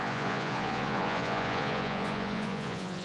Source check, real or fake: fake